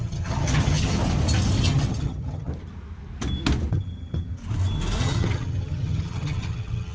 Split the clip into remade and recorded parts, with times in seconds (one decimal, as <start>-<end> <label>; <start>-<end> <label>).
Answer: 0.0-1.0 remade; 1.0-1.6 recorded; 1.6-2.5 remade; 2.5-3.7 recorded; 3.7-4.4 remade; 4.4-5.0 recorded; 5.0-6.9 remade